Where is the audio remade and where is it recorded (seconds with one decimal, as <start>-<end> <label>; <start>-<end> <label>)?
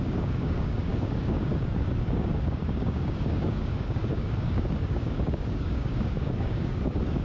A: 0.0-7.2 remade